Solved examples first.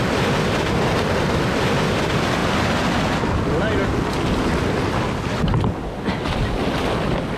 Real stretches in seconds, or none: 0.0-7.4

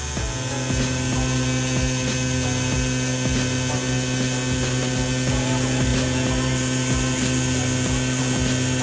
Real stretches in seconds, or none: 0.0-8.8

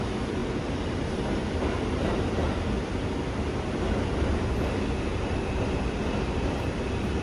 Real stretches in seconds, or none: 0.0-0.4; 1.1-1.6; 2.1-5.1

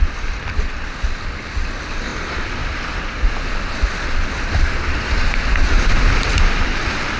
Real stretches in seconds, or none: 0.0-7.2

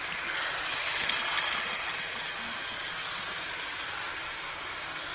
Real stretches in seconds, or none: 0.0-5.1

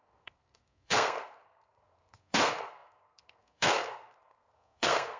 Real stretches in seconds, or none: none

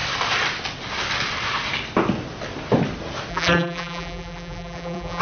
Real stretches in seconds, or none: 0.0-3.3